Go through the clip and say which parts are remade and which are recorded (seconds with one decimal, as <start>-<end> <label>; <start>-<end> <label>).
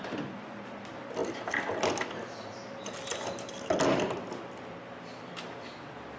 0.0-1.2 remade; 1.2-2.7 recorded; 2.7-6.2 remade